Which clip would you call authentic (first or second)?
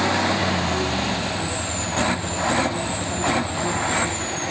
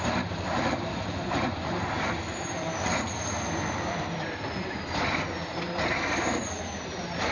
first